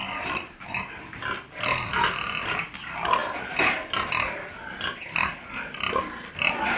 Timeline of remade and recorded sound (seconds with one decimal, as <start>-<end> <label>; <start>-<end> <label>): 0.0-6.8 recorded

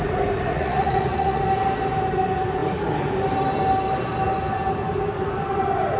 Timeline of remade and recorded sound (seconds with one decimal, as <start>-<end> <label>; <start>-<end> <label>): 0.0-0.5 recorded; 0.5-1.4 remade; 1.4-6.0 recorded

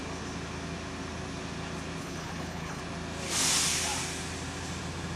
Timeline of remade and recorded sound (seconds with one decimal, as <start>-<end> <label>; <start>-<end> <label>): 0.0-2.0 recorded; 2.0-2.8 remade; 2.8-5.2 recorded

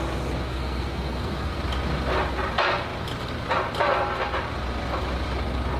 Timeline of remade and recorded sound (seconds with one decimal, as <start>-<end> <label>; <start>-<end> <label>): 0.0-0.5 recorded; 0.5-1.5 remade; 1.5-5.8 recorded

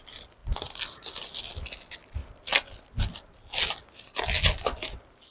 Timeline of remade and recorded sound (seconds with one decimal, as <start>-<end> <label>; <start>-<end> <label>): 0.0-5.3 recorded